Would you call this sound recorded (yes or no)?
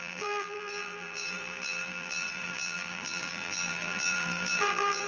no